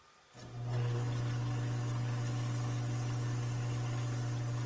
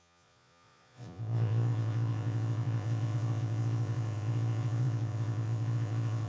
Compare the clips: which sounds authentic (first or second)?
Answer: first